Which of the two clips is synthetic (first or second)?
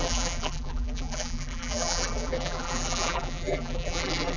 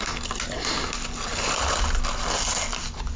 first